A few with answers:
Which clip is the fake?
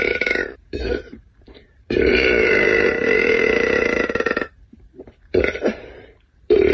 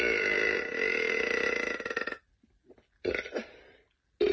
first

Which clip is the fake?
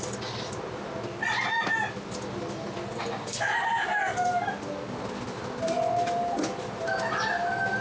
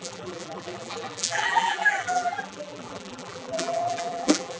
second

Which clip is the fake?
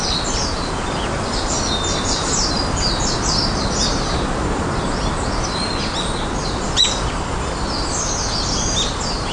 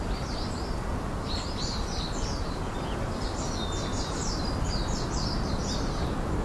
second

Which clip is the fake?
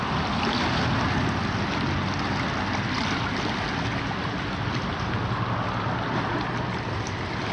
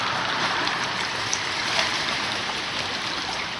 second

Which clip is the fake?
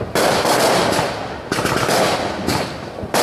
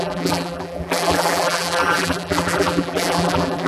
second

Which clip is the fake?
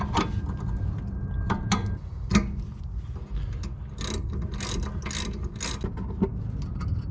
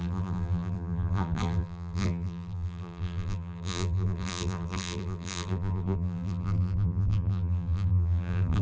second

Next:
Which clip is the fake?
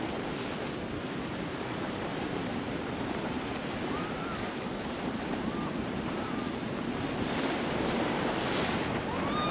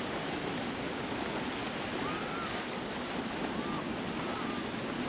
first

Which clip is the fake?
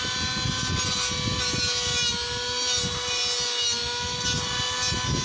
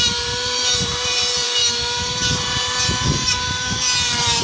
second